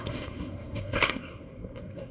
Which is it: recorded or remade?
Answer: remade